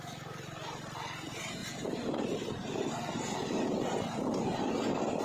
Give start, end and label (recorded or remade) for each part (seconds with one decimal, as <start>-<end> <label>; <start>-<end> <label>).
0.0-1.6 recorded; 1.6-4.7 remade; 4.7-5.2 recorded

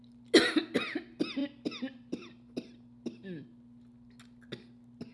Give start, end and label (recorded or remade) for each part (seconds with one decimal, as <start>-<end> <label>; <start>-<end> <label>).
0.0-5.1 recorded

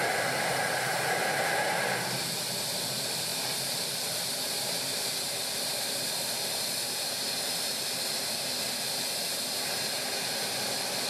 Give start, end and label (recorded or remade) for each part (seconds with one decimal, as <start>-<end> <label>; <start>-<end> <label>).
0.0-11.1 recorded

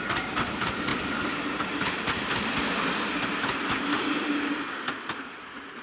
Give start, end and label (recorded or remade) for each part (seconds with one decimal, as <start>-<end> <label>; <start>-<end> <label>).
0.0-0.9 recorded; 0.9-2.7 remade; 2.7-5.8 recorded

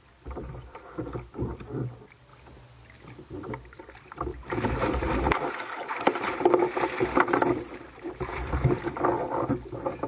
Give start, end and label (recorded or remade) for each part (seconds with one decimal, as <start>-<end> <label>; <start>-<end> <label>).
0.0-4.3 recorded; 4.3-9.0 remade; 9.0-10.1 recorded

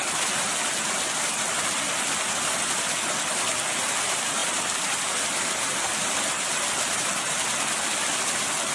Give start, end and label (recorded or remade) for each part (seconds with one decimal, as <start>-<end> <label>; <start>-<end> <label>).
0.0-4.4 recorded; 4.4-5.0 remade; 5.0-8.7 recorded